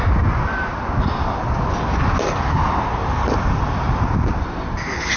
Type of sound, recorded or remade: recorded